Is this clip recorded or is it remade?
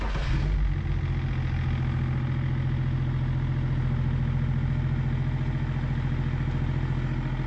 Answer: recorded